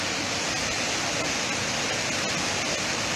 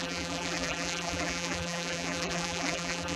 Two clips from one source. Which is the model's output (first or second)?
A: second